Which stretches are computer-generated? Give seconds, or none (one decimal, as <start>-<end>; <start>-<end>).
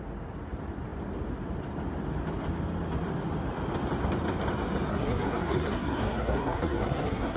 4.9-7.4